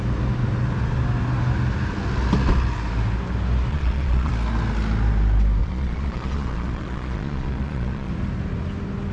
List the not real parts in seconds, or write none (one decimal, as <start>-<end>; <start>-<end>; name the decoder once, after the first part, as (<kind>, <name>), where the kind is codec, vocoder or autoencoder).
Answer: 3.7-4.3 (vocoder, Vocos); 5.6-8.1